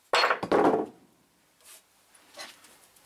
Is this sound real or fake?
real